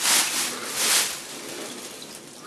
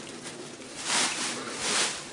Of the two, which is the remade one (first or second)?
second